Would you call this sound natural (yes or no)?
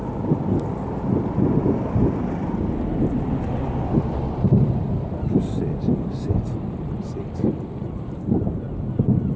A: no